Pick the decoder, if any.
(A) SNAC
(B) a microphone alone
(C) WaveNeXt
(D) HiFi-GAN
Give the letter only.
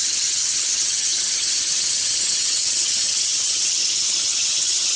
D